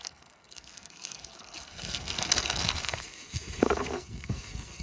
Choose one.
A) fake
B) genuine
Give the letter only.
A